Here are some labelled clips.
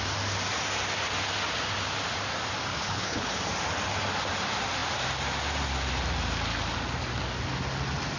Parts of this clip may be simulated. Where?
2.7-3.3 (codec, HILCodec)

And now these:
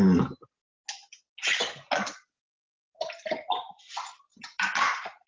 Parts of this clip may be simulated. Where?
none